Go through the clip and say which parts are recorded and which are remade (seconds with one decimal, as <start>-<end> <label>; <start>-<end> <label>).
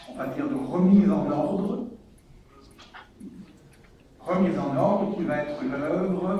0.0-6.4 recorded